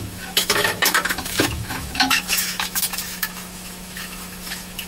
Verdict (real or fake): fake